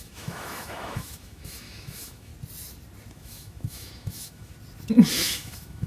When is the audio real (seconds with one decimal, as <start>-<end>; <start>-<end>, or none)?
2.3-3.1; 4.5-5.1